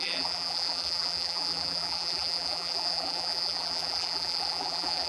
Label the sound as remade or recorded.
remade